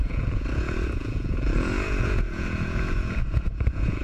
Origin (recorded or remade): remade